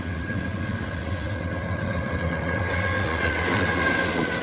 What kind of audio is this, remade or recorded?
remade